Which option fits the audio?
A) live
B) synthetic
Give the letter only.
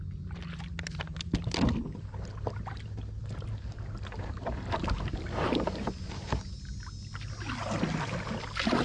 A